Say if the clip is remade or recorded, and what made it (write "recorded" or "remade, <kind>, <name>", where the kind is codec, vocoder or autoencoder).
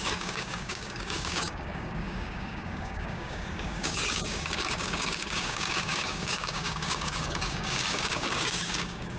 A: remade, codec, DAC